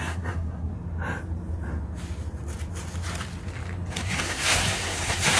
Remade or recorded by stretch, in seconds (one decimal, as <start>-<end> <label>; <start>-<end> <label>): 0.0-0.7 remade; 0.7-3.9 recorded; 3.9-5.4 remade

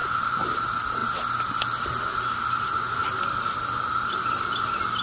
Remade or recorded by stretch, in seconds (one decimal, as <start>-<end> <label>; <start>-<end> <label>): 0.0-0.6 remade; 0.6-5.0 recorded